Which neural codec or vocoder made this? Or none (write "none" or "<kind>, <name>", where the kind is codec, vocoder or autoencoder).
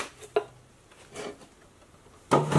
none